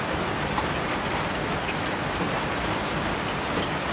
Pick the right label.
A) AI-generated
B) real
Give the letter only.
B